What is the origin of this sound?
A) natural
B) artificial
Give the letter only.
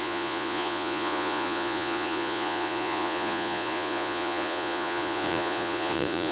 B